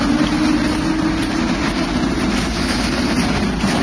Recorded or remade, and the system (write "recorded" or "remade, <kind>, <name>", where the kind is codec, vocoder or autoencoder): recorded